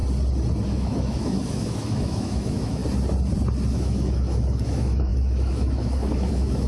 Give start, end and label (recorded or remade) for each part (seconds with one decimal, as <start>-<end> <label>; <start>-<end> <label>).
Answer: 0.0-0.7 recorded; 0.7-2.8 remade; 2.8-3.7 recorded; 3.7-6.7 remade

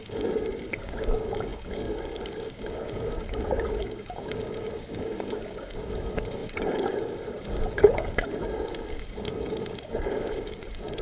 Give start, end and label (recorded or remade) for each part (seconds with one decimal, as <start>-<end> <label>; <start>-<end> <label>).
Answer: 0.0-11.0 remade

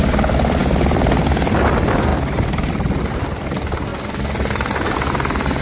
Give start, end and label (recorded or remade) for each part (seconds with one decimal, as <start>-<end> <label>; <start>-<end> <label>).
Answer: 0.0-5.6 recorded

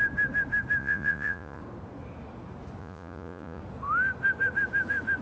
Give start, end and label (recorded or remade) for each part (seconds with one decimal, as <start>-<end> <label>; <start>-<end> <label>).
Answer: 0.0-0.8 recorded; 0.8-1.6 remade; 1.6-2.8 recorded; 2.8-3.6 remade; 3.6-5.2 recorded

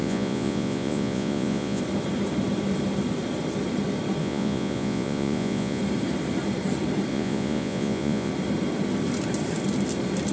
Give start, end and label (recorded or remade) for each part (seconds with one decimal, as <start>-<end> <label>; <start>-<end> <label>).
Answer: 0.0-1.8 remade; 1.8-4.2 recorded; 4.2-5.8 remade; 5.8-7.1 recorded; 7.1-8.3 remade; 8.3-10.3 recorded

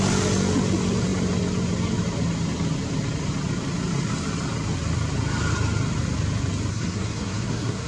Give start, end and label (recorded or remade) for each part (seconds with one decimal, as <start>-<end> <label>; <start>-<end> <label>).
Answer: 0.0-6.7 recorded; 6.7-7.9 remade